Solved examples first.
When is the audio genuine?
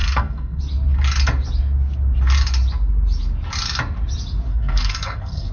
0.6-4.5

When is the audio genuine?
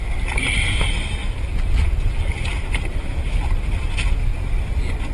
0.0-1.2; 3.3-5.1